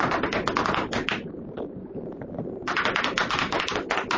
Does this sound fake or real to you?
fake